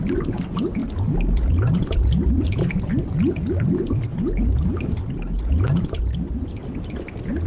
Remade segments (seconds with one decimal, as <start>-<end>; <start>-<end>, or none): 0.8-2.2